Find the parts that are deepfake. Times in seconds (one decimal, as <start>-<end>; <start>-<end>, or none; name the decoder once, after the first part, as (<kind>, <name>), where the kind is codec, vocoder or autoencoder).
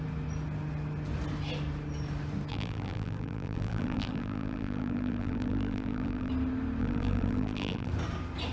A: 2.5-6.3 (vocoder, BigVGAN v2); 6.8-7.9